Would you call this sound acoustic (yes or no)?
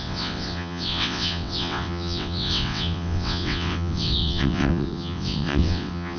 no